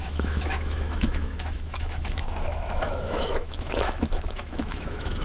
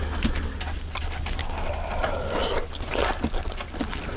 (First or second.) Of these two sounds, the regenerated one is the first